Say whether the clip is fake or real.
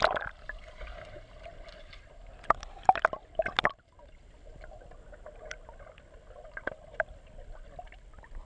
real